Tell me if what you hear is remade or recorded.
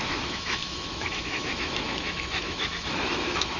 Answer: remade